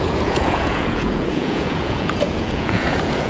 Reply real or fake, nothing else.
fake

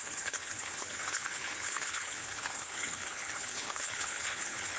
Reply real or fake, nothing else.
fake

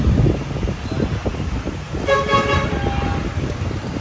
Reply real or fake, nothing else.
real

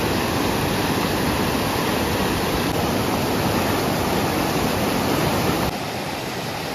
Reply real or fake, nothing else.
real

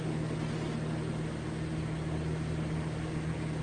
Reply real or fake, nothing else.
real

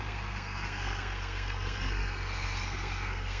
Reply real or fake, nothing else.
fake